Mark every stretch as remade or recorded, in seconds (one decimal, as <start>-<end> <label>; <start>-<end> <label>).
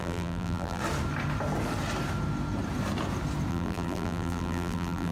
0.0-0.8 remade; 0.8-3.5 recorded; 3.5-5.1 remade